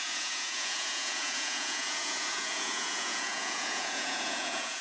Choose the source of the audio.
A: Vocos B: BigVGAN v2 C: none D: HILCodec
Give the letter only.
A